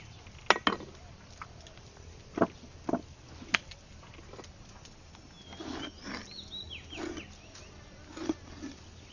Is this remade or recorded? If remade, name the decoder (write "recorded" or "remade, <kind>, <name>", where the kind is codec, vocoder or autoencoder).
recorded